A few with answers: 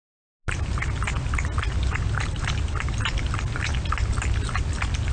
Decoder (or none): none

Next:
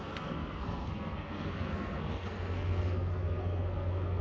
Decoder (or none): codec, SNAC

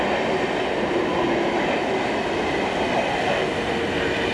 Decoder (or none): none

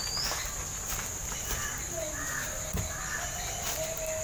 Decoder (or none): none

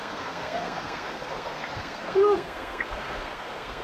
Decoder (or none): codec, SNAC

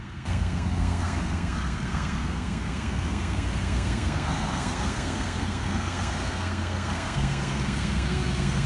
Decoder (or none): codec, SNAC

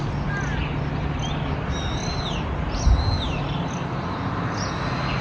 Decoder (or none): none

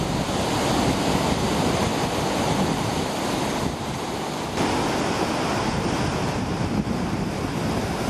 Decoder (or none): none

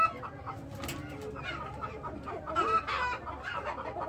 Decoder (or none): none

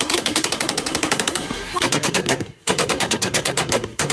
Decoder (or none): codec, SNAC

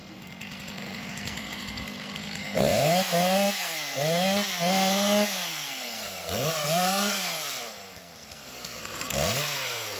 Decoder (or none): codec, SNAC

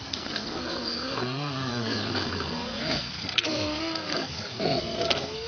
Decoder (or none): codec, SNAC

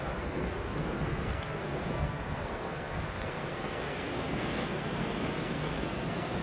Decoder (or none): codec, SNAC